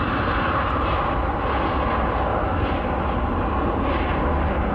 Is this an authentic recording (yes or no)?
yes